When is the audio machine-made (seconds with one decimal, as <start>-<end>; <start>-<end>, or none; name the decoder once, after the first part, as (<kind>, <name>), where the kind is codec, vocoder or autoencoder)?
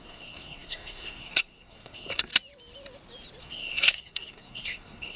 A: 0.0-2.3 (codec, SNAC); 3.4-5.2